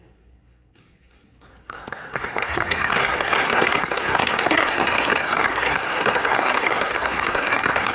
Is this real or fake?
fake